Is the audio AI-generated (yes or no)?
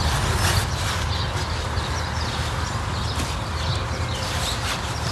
no